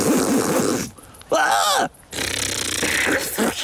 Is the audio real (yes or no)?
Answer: yes